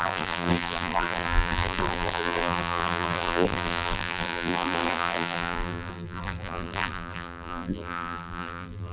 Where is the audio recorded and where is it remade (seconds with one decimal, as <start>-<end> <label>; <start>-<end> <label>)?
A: 0.0-8.9 remade